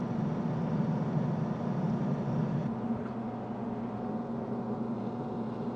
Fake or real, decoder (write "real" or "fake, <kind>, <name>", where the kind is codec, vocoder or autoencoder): real